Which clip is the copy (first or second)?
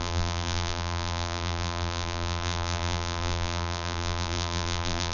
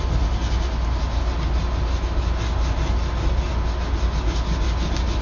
first